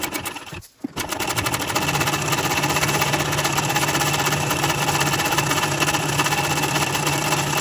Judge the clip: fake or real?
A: real